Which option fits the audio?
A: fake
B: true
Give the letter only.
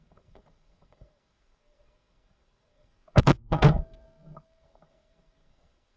A